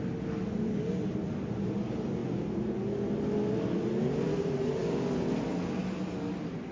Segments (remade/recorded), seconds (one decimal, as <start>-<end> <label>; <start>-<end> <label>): 0.0-6.7 recorded